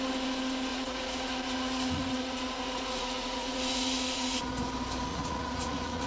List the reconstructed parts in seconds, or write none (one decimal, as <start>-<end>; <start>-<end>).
0.7-4.4; 5.1-6.1